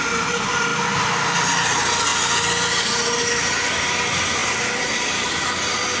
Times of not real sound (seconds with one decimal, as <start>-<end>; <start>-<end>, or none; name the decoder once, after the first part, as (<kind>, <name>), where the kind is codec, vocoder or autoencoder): none